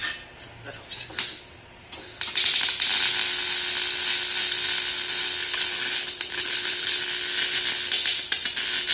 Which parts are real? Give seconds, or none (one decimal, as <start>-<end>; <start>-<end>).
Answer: 0.0-5.4; 7.0-8.9